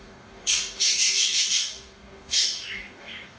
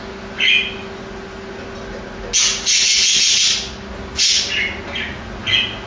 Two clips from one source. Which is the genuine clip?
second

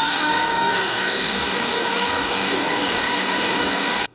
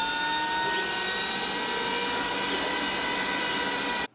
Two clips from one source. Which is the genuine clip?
second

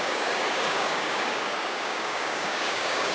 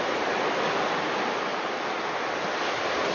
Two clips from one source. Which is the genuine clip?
second